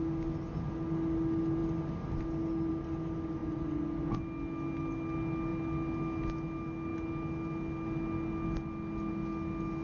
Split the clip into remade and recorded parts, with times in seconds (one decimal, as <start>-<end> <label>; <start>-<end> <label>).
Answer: 0.0-9.8 recorded